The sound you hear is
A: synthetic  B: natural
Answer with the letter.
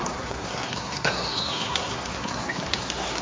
A